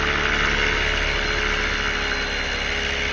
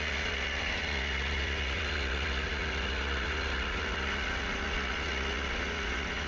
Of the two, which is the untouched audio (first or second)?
first